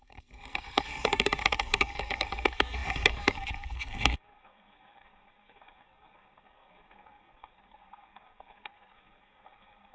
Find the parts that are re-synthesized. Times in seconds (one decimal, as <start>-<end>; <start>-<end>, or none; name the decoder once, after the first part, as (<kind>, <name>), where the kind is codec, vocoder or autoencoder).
0.0-9.9 (codec, SNAC)